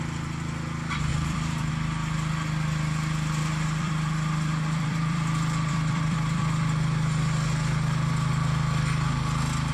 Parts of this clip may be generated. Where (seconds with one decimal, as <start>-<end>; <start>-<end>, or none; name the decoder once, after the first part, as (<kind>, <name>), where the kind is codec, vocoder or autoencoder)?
1.1-1.7 (vocoder, BigVGAN v2); 3.4-6.6